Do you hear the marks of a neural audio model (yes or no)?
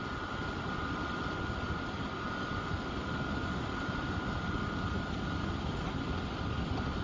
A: no